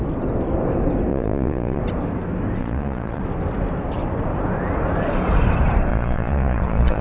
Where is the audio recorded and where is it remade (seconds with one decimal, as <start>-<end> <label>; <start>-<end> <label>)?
0.0-1.1 recorded; 1.1-1.8 remade; 1.8-2.6 recorded; 2.6-3.2 remade; 3.2-5.9 recorded; 5.9-7.0 remade